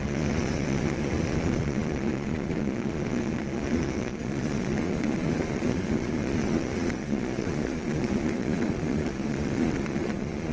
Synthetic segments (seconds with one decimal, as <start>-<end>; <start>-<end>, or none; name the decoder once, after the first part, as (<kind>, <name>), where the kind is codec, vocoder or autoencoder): 0.0-10.5 (vocoder, Vocos)